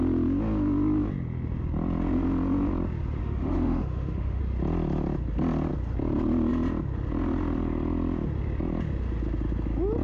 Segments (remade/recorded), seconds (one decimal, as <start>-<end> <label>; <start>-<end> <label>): 0.0-3.2 recorded; 3.2-4.4 remade; 4.4-10.0 recorded